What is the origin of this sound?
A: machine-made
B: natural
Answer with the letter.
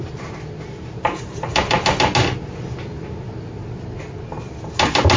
B